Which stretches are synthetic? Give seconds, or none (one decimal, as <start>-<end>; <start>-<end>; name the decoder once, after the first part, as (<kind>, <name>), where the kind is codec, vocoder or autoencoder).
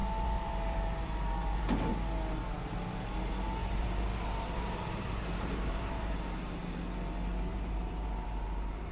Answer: 0.0-1.9 (vocoder, BigVGAN v2); 3.6-6.8; 7.5-8.9